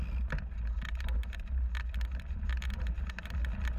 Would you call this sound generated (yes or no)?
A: no